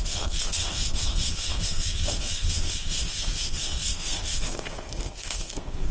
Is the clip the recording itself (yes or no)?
no